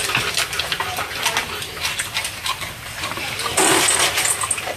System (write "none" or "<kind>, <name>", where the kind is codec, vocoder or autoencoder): none